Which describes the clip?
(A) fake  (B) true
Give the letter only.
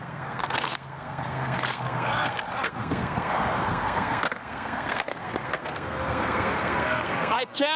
A